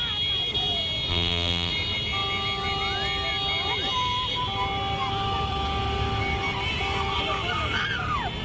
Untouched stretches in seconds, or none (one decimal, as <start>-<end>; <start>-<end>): 0.0-1.1; 1.7-8.4